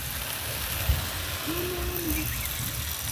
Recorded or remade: recorded